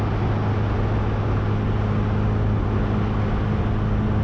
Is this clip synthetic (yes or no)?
no